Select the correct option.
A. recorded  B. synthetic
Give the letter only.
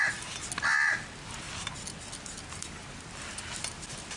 A